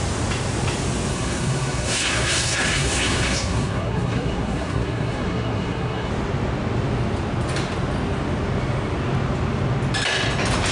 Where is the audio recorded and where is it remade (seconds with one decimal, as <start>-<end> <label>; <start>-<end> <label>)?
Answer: 0.0-1.1 recorded; 1.1-6.1 remade; 6.1-10.7 recorded